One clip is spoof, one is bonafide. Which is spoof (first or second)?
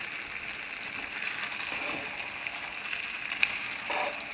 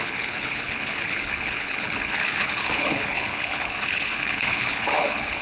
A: second